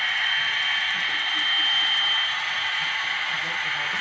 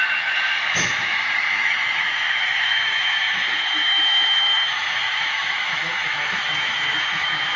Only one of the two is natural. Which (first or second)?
first